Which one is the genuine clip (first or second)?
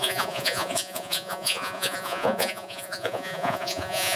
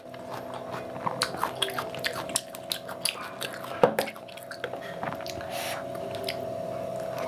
second